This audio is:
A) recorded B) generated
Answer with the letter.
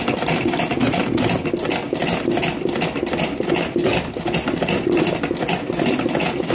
A